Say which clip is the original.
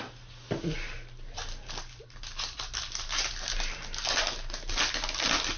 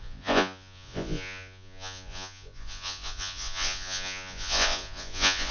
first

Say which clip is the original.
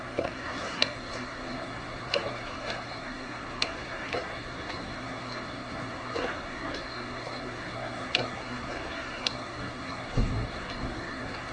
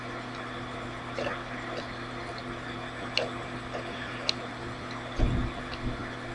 second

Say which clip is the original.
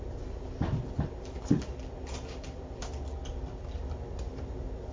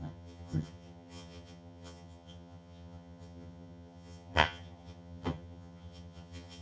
first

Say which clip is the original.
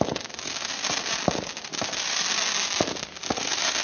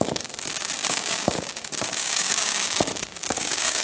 first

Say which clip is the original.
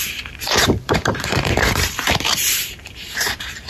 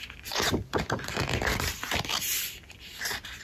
second